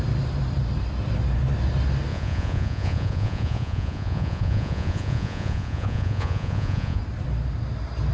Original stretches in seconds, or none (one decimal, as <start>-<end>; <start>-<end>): 0.0-2.1; 7.0-8.1